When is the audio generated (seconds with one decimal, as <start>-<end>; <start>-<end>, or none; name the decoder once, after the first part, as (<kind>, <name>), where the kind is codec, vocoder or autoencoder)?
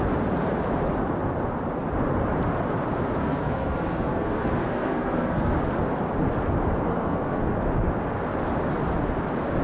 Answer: 3.2-5.5 (codec, SNAC); 6.9-7.4